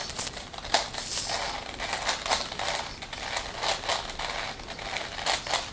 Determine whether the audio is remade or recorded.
recorded